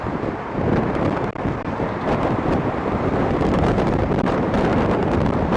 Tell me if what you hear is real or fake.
fake